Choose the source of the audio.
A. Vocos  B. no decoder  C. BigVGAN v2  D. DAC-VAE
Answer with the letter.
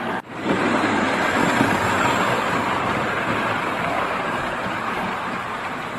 C